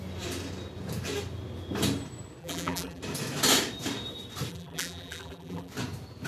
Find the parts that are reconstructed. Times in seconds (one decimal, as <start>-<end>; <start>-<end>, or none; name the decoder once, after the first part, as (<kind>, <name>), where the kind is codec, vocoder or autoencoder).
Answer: 2.4-3.0 (vocoder, BigVGAN v2); 4.5-5.7